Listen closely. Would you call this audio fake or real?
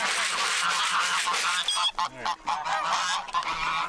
real